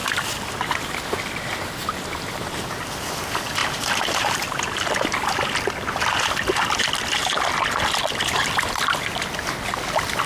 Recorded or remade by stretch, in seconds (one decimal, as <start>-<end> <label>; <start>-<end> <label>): 0.0-3.6 recorded; 3.6-4.9 remade; 4.9-10.3 recorded